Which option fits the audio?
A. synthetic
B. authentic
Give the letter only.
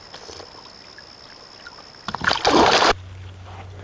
B